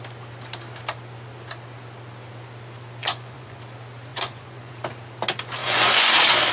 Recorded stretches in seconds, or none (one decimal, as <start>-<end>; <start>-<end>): 0.0-3.0; 3.6-4.1; 4.7-5.6; 6.1-6.5